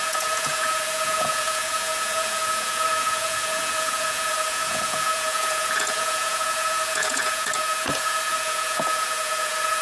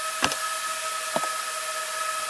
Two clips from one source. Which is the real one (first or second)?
second